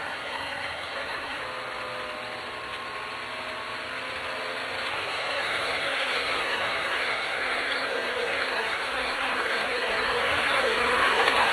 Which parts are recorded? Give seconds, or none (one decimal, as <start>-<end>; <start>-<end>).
1.4-4.9